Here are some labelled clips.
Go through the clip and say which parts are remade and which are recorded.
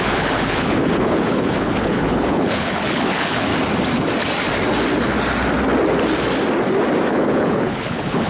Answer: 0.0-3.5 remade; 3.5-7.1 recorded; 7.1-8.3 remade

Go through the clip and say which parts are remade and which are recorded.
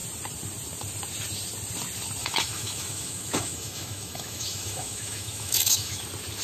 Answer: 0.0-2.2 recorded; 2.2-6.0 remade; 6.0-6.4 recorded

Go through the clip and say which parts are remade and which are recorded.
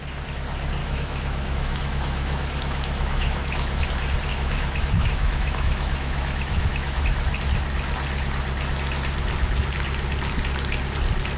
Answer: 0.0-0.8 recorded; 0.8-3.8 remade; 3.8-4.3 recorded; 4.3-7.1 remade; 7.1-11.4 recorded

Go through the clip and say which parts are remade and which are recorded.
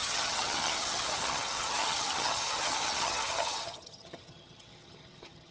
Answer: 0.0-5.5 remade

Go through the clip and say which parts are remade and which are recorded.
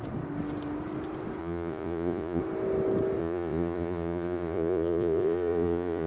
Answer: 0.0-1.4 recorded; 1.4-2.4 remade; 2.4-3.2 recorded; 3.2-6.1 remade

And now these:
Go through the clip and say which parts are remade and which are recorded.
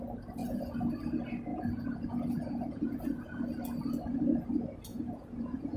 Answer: 0.0-0.4 recorded; 0.4-0.9 remade; 0.9-1.5 recorded; 1.5-3.4 remade; 3.4-4.9 recorded; 4.9-5.8 remade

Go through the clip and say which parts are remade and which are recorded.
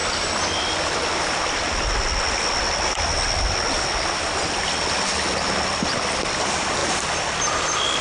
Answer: 0.0-8.0 recorded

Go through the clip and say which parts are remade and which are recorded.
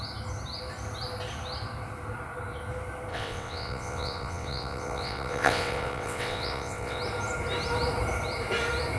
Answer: 0.0-3.1 recorded; 3.1-7.0 remade; 7.0-9.0 recorded